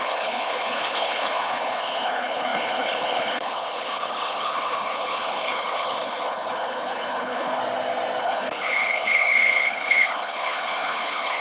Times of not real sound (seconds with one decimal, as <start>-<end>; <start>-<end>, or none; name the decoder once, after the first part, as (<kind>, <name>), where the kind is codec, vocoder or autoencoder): 0.0-7.6 (codec, HILCodec); 8.2-11.4